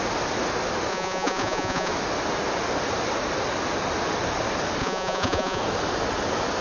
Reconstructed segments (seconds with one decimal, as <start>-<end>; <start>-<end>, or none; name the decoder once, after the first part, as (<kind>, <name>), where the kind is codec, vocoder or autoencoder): 0.9-1.9 (vocoder, Vocos); 4.8-5.6